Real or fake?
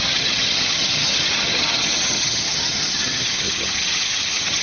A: fake